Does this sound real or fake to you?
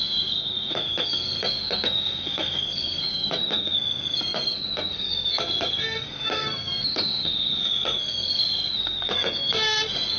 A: fake